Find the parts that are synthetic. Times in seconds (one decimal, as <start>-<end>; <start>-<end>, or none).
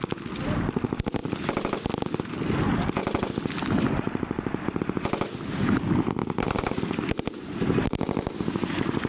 1.2-2.2; 3.0-4.8; 6.2-6.8